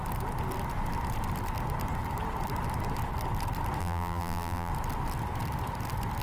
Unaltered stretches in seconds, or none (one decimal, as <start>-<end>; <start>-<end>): 0.0-3.8; 4.7-6.2